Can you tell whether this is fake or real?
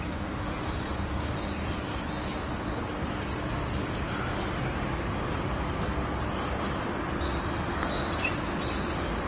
real